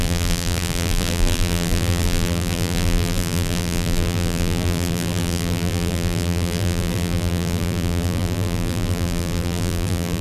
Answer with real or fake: fake